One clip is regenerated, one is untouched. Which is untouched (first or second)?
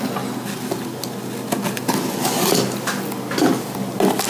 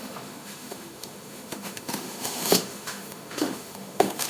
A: first